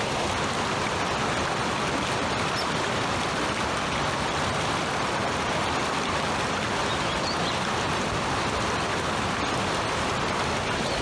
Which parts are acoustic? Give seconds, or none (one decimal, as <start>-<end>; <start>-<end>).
0.0-11.0